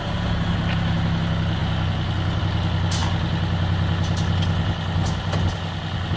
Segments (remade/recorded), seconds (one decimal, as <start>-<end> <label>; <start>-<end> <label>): 0.0-6.2 recorded